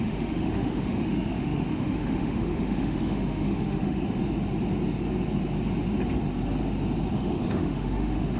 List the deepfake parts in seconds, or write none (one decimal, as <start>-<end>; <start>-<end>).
0.0-4.2; 7.1-8.4